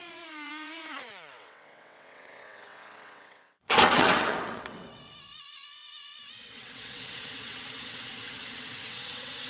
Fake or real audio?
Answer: fake